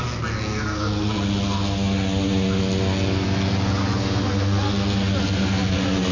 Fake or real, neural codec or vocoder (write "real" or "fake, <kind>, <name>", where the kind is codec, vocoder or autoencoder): real